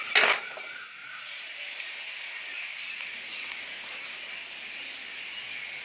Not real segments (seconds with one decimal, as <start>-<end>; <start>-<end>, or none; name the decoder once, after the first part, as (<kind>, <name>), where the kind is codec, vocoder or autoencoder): 1.0-1.6 (vocoder, Vocos); 2.9-4.3